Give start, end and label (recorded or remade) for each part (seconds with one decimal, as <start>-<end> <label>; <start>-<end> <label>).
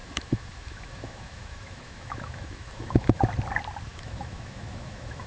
0.0-3.2 remade; 3.2-3.9 recorded; 3.9-5.3 remade